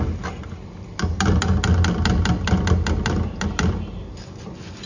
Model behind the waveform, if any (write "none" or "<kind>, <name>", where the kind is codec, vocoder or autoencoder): none